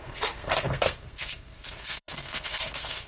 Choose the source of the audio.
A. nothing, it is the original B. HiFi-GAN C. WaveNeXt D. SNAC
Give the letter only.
D